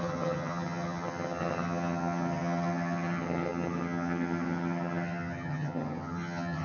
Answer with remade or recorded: remade